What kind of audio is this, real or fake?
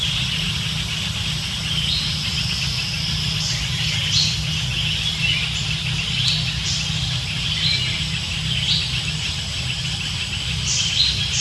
real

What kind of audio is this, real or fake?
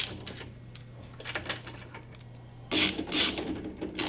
real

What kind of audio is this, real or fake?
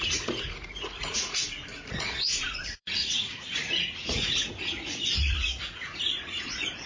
fake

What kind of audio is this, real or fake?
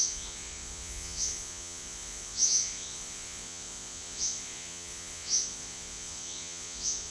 fake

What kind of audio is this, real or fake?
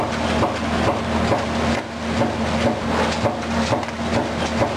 real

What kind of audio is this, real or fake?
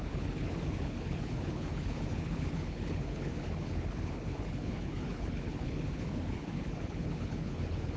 fake